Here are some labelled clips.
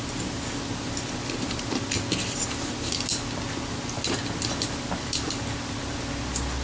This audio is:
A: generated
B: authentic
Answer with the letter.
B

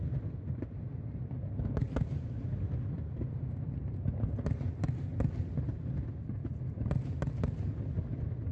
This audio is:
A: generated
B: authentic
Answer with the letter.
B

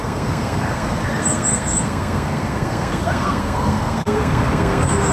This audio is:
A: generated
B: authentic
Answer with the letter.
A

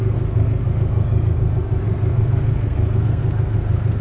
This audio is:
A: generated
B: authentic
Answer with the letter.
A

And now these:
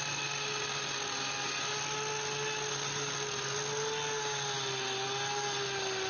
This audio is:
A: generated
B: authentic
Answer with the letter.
B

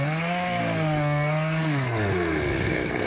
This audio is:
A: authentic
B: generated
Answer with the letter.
B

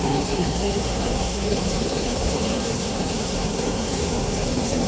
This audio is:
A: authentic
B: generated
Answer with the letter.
B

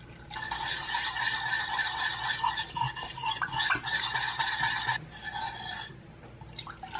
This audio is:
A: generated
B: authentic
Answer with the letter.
B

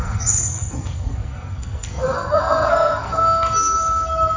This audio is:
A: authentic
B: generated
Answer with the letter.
B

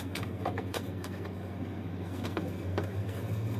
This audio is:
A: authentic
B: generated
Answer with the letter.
B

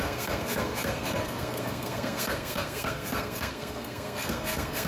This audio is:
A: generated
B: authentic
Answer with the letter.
A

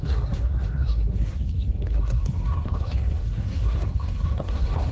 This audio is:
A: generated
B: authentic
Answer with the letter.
A